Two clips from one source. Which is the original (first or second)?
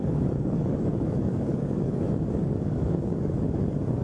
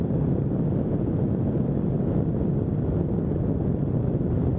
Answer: second